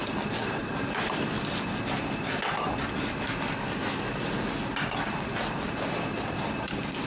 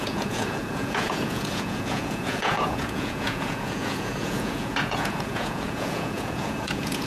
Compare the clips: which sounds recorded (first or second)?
first